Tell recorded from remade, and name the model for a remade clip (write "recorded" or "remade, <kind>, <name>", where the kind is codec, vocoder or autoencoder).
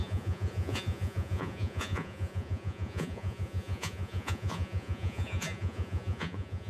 remade, vocoder, Vocos